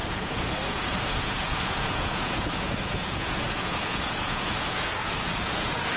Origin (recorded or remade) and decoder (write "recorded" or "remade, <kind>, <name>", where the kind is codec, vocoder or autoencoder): remade, vocoder, Vocos